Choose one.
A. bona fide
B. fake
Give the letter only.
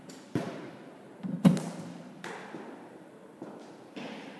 B